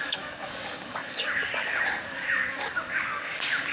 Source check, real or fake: fake